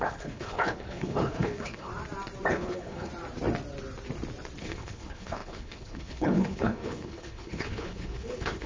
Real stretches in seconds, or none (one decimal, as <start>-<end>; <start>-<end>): 1.9-2.5; 3.1-4.6